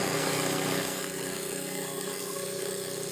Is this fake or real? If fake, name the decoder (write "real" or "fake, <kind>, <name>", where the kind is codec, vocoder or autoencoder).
fake, codec, SNAC